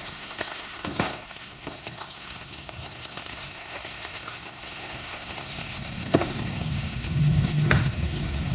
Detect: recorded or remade remade